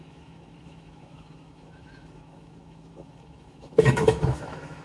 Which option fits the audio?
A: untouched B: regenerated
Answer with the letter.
B